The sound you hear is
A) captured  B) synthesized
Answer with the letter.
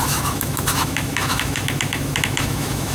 B